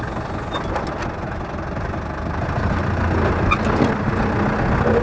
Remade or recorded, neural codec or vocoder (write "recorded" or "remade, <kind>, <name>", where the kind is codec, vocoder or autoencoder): recorded